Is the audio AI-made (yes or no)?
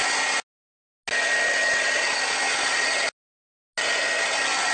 no